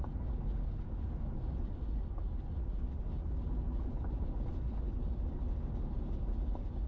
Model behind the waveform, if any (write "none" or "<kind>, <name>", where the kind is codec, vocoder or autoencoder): none